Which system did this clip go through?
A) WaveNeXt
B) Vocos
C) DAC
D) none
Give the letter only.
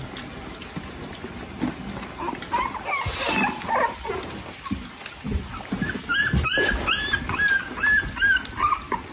D